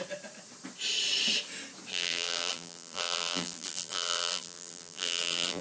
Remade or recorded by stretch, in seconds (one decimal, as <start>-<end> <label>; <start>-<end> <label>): 0.0-1.9 recorded; 1.9-5.6 remade